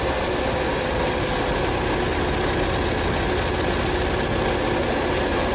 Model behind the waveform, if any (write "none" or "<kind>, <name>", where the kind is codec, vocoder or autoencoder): none